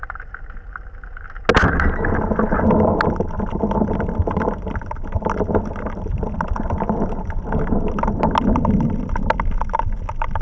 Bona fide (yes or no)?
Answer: yes